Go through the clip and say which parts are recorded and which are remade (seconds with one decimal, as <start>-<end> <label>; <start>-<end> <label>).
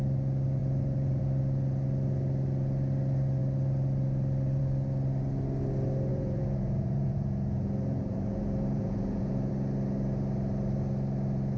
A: 0.0-0.6 recorded; 0.6-1.2 remade; 1.2-6.1 recorded; 6.1-9.5 remade; 9.5-11.6 recorded